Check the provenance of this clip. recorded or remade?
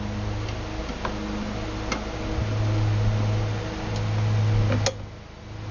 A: recorded